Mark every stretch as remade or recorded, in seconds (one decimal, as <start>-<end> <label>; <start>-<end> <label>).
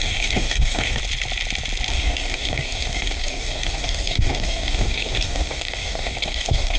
0.0-1.0 remade; 1.0-1.9 recorded; 1.9-6.8 remade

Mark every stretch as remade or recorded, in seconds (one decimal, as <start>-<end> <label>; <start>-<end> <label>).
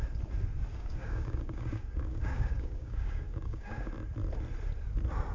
0.0-0.7 recorded; 0.7-3.9 remade; 3.9-5.3 recorded